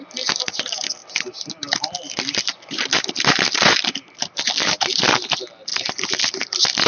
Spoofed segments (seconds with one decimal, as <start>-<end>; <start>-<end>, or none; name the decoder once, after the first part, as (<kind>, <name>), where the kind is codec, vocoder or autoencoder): 1.0-3.1 (vocoder, BigVGAN v2); 5.7-6.2